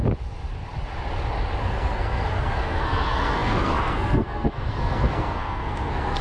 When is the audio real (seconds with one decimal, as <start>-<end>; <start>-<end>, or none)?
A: 0.0-1.6